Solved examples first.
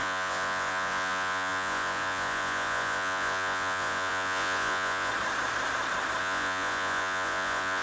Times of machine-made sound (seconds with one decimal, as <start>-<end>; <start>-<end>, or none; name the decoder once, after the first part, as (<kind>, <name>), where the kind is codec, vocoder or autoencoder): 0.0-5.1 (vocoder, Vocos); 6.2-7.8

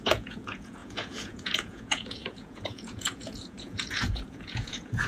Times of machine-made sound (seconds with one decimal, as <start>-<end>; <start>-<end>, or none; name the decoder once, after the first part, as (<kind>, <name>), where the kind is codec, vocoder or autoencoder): 0.0-5.1 (vocoder, Vocos)

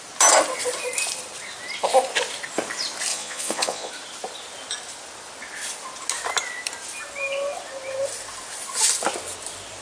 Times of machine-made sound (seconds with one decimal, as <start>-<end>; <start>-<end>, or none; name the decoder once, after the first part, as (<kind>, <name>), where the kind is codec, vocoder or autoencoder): 3.1-3.9 (vocoder, Vocos)

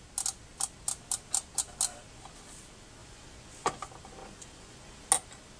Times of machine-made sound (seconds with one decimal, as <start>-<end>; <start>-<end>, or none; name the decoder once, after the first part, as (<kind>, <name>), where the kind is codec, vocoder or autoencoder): 3.0-3.8 (vocoder, Vocos); 4.2-5.0

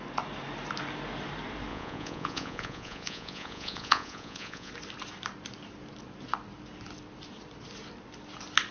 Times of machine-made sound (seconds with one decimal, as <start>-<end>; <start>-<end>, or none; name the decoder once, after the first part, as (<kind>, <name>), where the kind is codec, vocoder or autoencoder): 1.7-4.7 (vocoder, Vocos)